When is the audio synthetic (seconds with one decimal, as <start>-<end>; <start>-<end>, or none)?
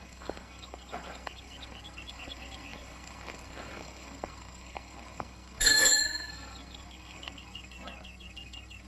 0.0-8.9